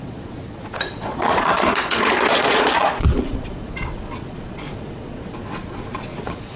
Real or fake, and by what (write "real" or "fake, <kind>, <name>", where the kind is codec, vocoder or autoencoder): fake, vocoder, Vocos